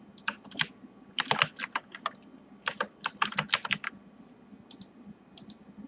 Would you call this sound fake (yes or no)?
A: no